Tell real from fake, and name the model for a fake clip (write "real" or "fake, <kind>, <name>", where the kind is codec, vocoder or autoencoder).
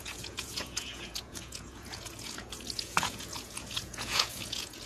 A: fake, vocoder, Vocos